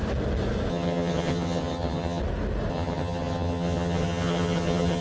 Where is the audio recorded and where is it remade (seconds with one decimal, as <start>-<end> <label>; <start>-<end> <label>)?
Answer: 0.0-0.7 recorded; 0.7-2.2 remade; 2.2-2.7 recorded; 2.7-5.0 remade